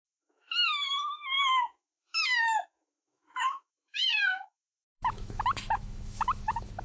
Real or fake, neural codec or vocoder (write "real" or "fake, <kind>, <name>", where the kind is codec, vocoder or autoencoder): fake, autoencoder, DAC-VAE